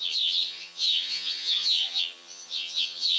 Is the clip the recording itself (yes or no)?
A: no